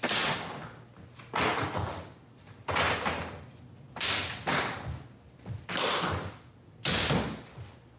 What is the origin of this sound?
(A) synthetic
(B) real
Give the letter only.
B